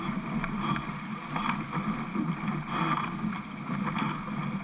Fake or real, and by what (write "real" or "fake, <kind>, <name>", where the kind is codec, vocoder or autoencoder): real